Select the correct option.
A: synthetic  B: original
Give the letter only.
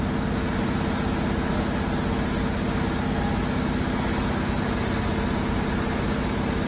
B